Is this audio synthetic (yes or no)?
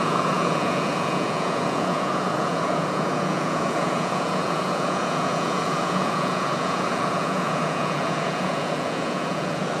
yes